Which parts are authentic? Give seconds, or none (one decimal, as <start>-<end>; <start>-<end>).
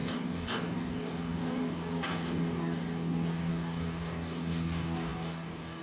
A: none